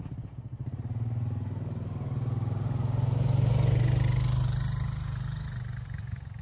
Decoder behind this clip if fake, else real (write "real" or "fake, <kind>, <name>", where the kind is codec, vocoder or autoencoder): real